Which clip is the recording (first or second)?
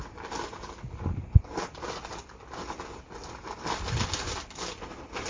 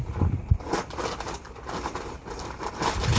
first